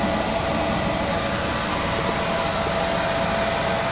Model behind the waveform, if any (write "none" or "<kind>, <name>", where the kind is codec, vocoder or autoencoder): none